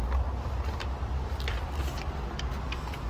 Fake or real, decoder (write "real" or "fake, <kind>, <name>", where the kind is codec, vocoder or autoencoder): real